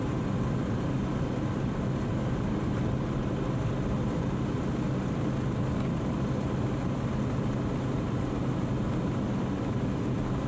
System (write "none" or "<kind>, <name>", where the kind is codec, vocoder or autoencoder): none